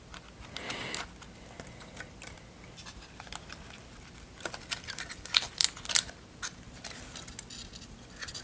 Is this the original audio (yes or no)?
yes